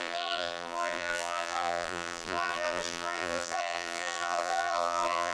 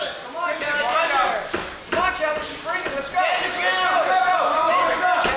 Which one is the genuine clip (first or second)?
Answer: second